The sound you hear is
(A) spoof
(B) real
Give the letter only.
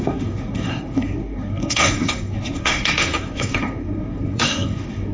A